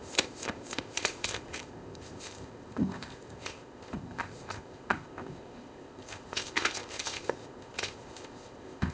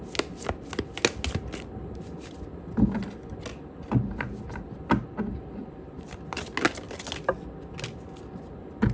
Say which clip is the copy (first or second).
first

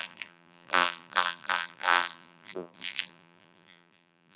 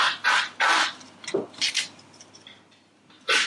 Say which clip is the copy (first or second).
first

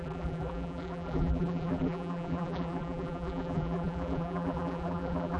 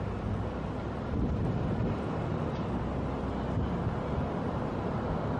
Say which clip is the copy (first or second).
first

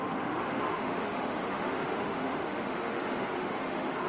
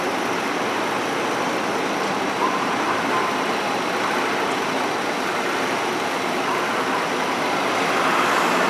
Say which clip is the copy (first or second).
first